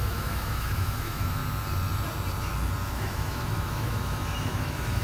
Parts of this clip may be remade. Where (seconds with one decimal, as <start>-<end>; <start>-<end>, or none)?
0.0-1.4; 2.9-5.0